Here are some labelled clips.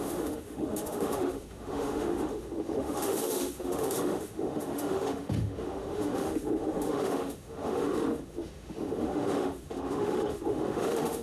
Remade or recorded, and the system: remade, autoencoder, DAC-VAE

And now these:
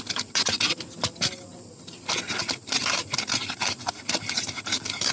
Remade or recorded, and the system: recorded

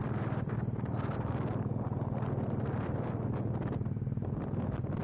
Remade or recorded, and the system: remade, vocoder, BigVGAN v2